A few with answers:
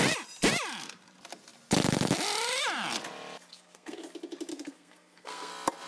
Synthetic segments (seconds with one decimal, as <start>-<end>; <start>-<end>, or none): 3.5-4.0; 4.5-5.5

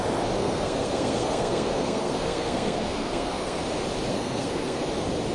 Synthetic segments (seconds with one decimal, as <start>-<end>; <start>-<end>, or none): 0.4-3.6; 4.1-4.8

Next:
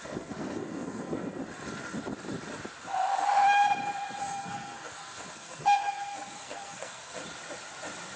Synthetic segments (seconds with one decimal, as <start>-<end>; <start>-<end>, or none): 0.0-1.4; 4.2-7.2

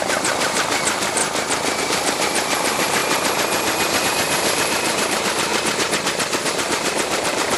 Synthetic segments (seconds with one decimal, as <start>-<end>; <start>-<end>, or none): 0.0-1.2; 1.8-3.0; 4.0-5.5; 6.5-7.6

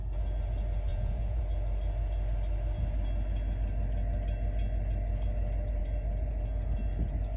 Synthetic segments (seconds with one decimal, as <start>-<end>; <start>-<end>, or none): 0.9-1.4

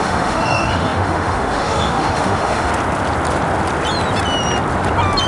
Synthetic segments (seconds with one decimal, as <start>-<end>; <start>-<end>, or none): 0.0-2.7

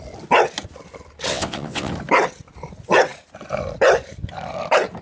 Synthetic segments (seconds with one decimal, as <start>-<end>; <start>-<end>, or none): 1.3-1.9

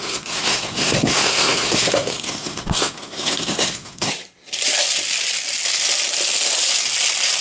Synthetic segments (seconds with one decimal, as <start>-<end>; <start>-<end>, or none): 0.0-4.1